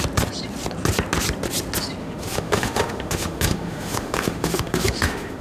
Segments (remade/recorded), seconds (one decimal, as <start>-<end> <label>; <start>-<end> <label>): 0.0-2.0 recorded; 2.0-5.4 remade